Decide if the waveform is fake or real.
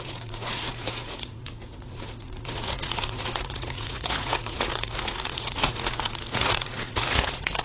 fake